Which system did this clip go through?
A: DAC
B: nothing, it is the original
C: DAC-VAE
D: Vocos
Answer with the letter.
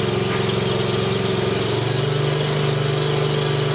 B